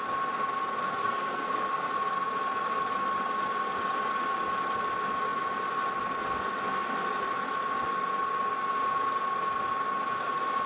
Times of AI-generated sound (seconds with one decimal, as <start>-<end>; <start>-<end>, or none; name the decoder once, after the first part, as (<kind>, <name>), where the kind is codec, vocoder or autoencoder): 1.0-1.9 (codec, SNAC)